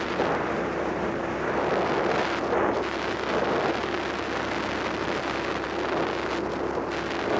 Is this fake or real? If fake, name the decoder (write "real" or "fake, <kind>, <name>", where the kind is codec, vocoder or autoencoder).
real